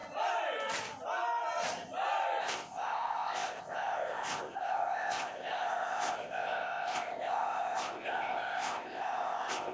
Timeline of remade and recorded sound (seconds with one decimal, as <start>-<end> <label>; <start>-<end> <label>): 0.0-2.4 recorded; 2.4-9.7 remade